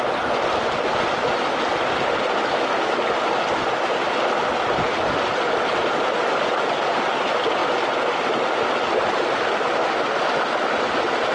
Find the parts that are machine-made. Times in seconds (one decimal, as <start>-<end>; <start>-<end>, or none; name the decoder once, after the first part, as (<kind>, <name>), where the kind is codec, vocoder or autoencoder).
none